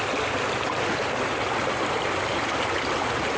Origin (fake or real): real